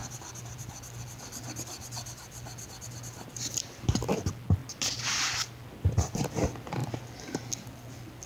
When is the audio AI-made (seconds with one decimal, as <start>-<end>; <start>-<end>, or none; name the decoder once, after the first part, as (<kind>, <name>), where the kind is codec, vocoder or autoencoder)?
4.6-6.3 (vocoder, BigVGAN v2)